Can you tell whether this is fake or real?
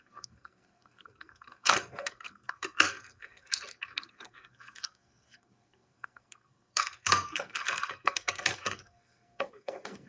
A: fake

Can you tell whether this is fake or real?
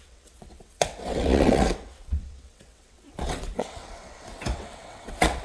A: fake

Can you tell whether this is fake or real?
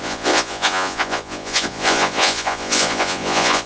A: fake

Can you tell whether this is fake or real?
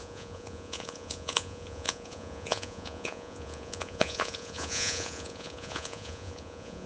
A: fake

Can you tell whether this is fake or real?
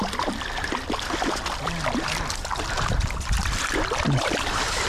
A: fake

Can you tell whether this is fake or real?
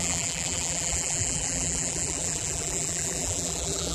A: fake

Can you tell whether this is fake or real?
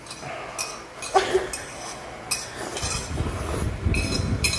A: real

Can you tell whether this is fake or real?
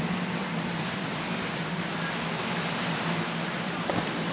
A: fake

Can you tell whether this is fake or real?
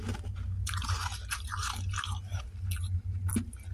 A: real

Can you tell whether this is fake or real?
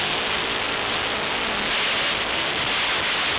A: real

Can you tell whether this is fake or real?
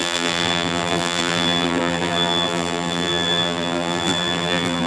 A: fake